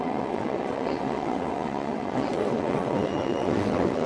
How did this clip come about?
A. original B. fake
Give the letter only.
B